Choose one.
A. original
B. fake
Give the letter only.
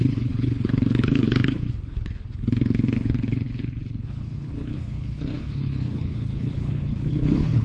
B